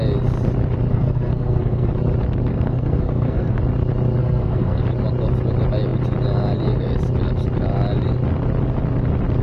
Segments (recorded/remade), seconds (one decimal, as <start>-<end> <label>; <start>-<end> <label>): 0.0-0.9 recorded; 0.9-1.9 remade; 1.9-2.5 recorded; 2.5-3.6 remade; 3.6-4.2 recorded; 4.2-4.8 remade; 4.8-9.4 recorded